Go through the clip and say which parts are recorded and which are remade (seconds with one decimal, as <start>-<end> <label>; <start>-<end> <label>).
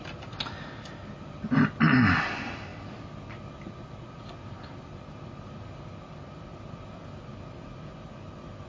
0.0-8.7 recorded